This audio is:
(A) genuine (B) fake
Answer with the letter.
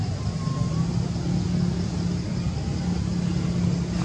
A